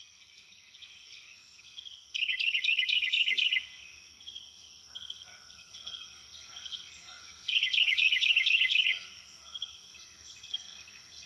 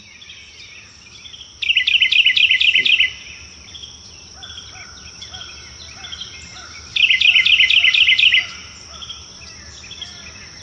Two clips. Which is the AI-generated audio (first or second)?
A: first